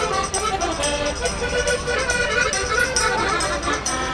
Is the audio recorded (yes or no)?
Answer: yes